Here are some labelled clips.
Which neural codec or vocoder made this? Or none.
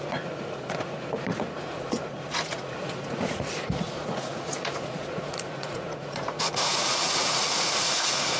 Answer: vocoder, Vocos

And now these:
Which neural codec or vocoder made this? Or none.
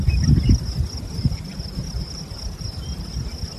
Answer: none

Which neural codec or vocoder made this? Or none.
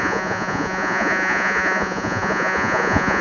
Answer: vocoder, Vocos